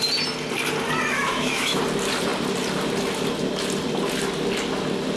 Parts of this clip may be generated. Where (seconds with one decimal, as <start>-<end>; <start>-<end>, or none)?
1.2-1.8